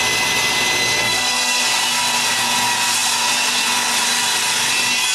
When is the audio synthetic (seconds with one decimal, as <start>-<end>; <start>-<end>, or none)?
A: 1.0-1.6